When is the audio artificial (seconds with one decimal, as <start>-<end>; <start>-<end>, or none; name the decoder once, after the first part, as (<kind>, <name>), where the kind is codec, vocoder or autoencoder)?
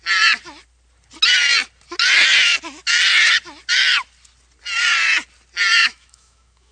5.8-6.7 (autoencoder, DAC-VAE)